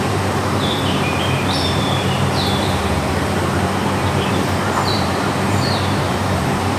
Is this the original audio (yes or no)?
no